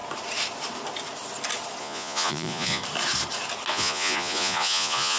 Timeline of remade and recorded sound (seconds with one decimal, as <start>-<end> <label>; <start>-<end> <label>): 0.0-1.8 recorded; 1.8-2.8 remade; 2.8-3.7 recorded; 3.7-5.2 remade